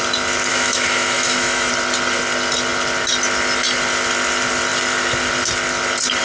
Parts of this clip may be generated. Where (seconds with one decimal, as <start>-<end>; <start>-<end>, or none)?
0.5-1.7